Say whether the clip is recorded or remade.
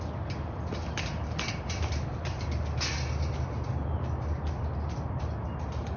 recorded